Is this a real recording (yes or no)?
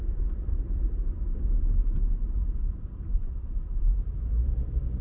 no